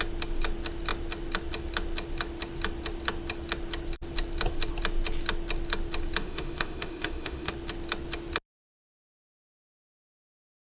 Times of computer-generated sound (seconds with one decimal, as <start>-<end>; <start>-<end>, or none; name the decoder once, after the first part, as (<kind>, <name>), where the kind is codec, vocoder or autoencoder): 6.2-7.5 (autoencoder, DAC-VAE)